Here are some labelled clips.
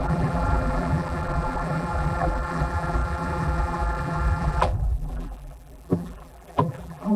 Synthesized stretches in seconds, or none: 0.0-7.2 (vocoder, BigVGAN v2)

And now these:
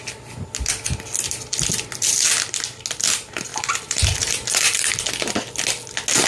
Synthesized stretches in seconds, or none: 3.5-5.0 (vocoder, BigVGAN v2)

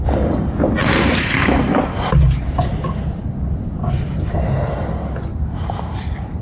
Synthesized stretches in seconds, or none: 0.8-2.4 (vocoder, BigVGAN v2); 5.3-6.4

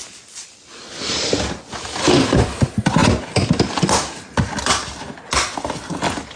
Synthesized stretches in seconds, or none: none

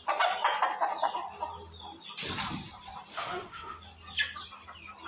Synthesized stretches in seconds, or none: 3.1-3.8 (autoencoder, DAC-VAE)

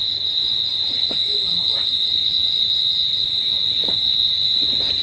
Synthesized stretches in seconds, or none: none

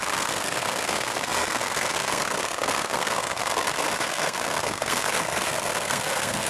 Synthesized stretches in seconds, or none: 0.0-6.5 (codec, SNAC)